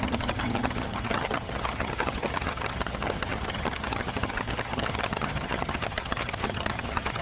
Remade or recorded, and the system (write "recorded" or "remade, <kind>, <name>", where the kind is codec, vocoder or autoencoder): remade, vocoder, HiFi-GAN